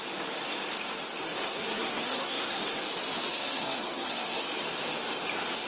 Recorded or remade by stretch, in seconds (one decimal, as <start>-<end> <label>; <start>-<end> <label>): 0.0-1.2 recorded; 1.2-2.8 remade; 2.8-3.3 recorded; 3.3-4.4 remade; 4.4-5.7 recorded